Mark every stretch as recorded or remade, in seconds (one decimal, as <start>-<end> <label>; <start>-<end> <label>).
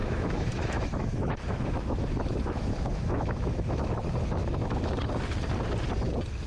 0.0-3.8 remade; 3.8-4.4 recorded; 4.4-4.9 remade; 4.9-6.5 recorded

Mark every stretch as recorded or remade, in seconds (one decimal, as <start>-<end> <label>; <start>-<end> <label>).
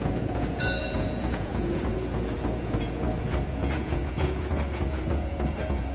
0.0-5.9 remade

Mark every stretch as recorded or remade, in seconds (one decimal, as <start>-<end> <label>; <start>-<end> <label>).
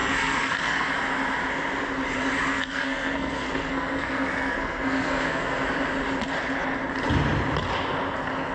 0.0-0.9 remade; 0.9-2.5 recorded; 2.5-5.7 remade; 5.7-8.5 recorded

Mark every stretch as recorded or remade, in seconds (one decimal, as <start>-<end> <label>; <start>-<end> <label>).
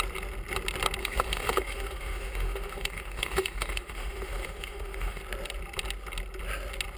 0.0-1.0 recorded; 1.0-5.2 remade; 5.2-7.0 recorded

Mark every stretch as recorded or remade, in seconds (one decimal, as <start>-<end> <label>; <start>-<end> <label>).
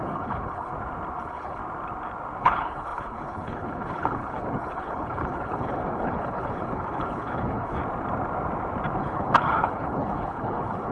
0.0-0.7 remade; 0.7-1.2 recorded; 1.2-1.6 remade; 1.6-2.4 recorded; 2.4-7.8 remade; 7.8-9.0 recorded; 9.0-10.9 remade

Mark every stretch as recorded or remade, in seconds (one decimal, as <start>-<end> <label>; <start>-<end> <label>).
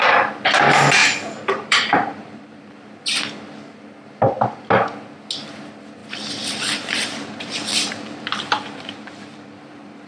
0.0-1.0 recorded; 1.0-2.8 remade; 2.8-6.0 recorded; 6.0-10.1 remade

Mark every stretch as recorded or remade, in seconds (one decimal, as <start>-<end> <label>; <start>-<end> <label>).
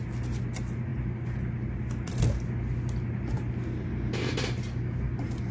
0.0-5.5 recorded